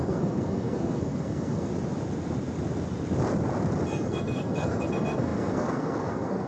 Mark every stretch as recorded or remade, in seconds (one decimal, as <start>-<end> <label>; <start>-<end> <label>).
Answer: 0.0-1.7 remade; 1.7-3.9 recorded; 3.9-6.5 remade